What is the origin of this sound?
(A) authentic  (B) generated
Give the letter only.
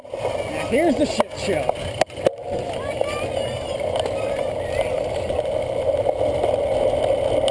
A